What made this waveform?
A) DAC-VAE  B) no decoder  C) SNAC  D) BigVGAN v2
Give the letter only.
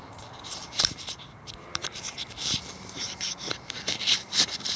D